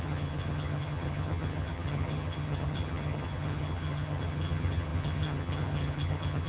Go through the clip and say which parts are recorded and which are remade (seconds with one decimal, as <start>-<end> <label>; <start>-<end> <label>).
0.0-6.5 remade